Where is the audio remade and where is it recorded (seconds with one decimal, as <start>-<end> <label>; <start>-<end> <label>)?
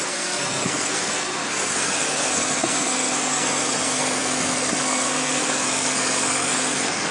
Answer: 0.0-7.1 remade